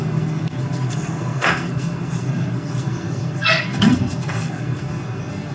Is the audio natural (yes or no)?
no